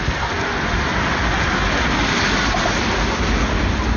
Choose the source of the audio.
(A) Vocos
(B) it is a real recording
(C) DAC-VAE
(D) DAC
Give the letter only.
B